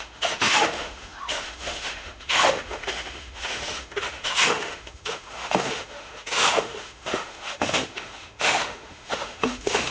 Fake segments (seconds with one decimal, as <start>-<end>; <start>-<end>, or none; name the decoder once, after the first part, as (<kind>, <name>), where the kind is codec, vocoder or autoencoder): 0.0-9.9 (autoencoder, DAC-VAE)